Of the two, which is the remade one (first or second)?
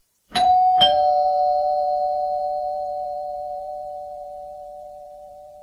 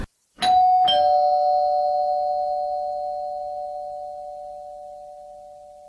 first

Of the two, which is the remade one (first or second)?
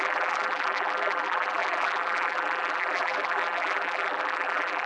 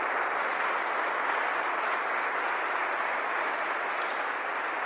first